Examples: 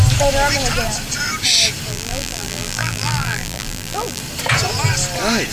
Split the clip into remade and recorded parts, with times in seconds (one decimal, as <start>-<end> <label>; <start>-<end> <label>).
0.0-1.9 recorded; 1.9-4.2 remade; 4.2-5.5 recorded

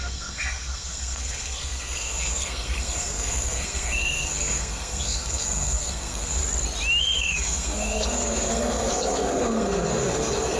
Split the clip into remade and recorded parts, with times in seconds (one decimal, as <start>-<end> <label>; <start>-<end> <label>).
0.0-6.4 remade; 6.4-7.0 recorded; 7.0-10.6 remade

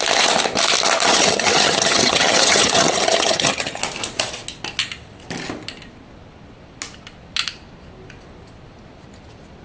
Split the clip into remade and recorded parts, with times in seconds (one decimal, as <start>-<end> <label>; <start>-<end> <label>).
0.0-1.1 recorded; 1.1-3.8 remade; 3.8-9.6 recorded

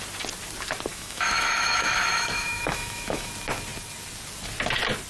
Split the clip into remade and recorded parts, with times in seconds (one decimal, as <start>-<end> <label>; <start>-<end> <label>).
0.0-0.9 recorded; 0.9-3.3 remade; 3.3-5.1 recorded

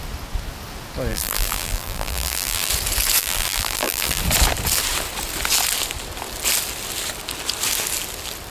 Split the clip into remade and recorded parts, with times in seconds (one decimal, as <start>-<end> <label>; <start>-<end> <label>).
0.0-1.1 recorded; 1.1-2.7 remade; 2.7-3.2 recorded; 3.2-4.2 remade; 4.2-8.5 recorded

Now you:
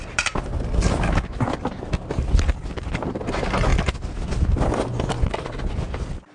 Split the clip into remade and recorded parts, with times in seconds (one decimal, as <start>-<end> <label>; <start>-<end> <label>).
0.0-6.3 recorded

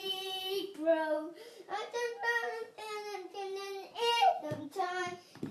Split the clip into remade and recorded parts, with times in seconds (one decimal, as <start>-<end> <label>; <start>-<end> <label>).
0.0-4.8 recorded; 4.8-5.5 remade

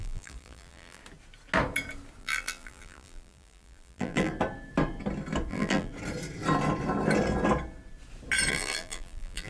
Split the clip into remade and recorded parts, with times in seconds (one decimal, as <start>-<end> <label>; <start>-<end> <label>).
0.0-1.0 remade; 1.0-2.2 recorded; 2.2-4.3 remade; 4.3-5.5 recorded; 5.5-5.9 remade; 5.9-8.5 recorded; 8.5-9.5 remade